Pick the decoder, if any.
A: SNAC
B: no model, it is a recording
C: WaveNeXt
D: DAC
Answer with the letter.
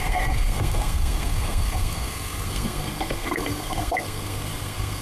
A